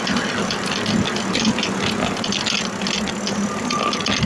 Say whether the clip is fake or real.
real